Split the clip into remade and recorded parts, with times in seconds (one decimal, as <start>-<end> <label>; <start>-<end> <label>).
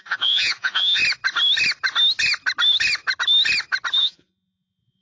0.0-1.0 remade; 1.0-4.0 recorded; 4.0-5.0 remade